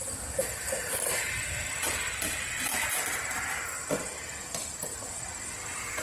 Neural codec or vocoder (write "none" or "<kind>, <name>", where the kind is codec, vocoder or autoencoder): none